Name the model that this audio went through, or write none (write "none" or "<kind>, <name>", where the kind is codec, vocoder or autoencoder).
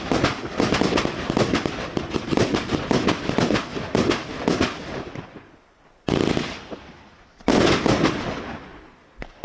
none